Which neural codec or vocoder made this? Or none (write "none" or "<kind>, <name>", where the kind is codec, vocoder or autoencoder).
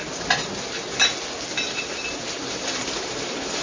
none